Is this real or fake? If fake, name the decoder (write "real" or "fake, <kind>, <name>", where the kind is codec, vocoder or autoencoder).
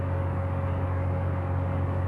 fake, codec, DAC